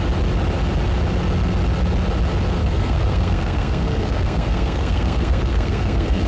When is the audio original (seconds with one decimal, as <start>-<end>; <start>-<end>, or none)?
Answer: 0.0-2.6

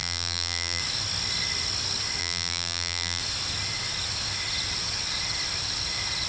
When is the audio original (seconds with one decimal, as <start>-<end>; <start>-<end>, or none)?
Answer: 0.8-2.2; 3.2-6.3

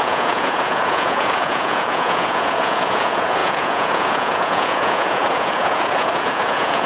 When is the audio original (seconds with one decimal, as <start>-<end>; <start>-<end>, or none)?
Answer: none

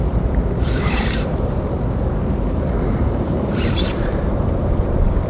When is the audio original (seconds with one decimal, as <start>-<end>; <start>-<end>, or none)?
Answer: none

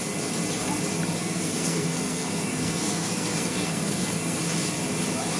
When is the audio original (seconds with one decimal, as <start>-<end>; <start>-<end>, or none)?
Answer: 0.0-1.2; 4.4-5.4

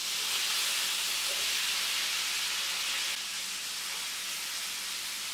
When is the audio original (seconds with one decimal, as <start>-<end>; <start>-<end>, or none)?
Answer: 0.0-5.3

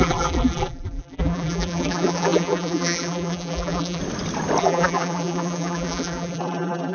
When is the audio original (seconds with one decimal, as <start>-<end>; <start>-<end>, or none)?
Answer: 4.0-4.6

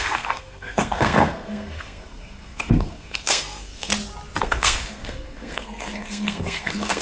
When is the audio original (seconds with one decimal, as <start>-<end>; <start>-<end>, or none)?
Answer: 3.9-4.4